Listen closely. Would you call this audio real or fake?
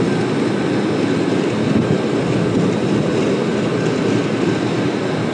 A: real